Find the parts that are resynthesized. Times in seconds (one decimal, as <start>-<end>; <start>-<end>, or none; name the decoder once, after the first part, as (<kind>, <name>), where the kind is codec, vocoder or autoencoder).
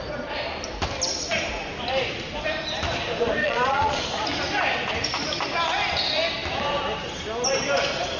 3.4-4.0 (vocoder, Vocos)